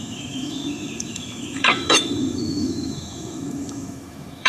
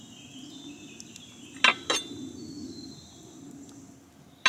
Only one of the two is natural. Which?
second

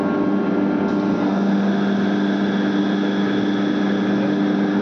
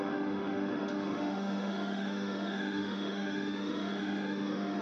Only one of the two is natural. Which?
first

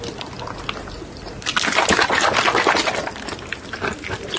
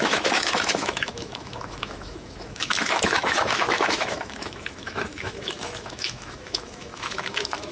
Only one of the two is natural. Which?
first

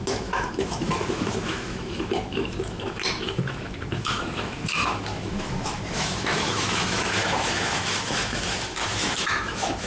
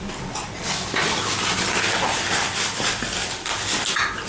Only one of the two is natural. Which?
second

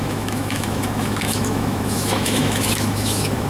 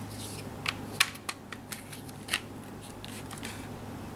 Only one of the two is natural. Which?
second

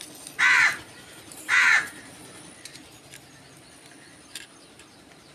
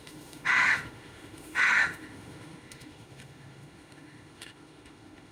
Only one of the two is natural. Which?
first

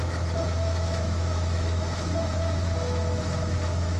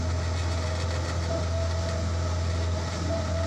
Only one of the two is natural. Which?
second